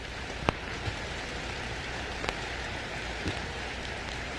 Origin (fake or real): fake